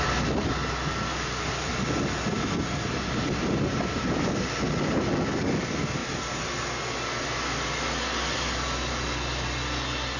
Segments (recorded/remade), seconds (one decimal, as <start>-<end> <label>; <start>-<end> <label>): 0.0-10.2 recorded